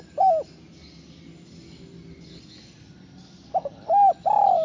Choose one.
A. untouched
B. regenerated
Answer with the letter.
A